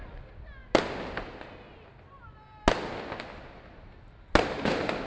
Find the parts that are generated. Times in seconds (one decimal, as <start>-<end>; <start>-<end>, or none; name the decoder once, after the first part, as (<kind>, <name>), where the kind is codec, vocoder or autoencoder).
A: none